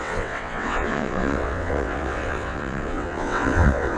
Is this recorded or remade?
remade